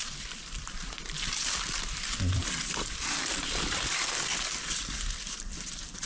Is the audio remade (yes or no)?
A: yes